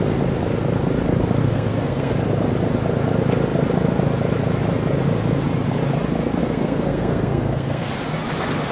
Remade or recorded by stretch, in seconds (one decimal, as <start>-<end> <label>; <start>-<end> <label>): 0.0-1.4 recorded; 1.4-2.1 remade; 2.1-6.4 recorded; 6.4-7.9 remade; 7.9-8.7 recorded